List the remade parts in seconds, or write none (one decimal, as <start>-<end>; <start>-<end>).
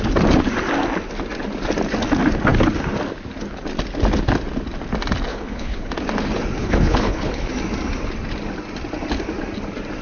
5.3-5.9; 6.6-7.5